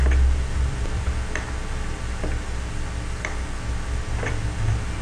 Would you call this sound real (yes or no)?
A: yes